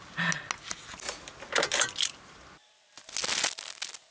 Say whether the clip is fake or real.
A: real